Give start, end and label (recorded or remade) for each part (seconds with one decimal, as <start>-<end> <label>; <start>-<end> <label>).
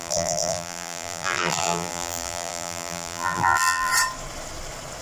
0.0-3.9 remade; 3.9-5.0 recorded